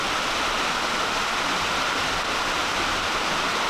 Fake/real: real